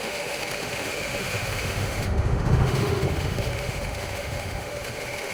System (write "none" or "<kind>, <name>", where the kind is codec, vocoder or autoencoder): autoencoder, DAC-VAE